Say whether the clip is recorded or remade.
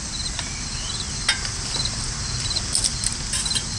recorded